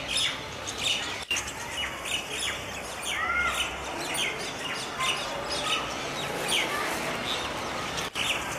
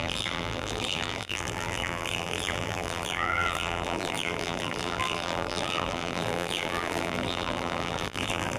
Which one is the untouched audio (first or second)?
first